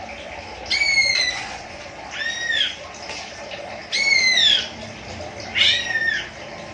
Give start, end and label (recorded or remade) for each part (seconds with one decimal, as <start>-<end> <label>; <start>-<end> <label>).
0.0-1.0 recorded; 1.0-1.8 remade; 1.8-6.7 recorded